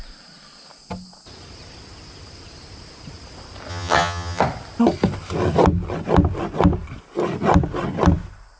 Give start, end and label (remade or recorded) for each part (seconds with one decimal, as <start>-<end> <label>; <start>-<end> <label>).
0.0-3.7 recorded; 3.7-4.4 remade; 4.4-8.6 recorded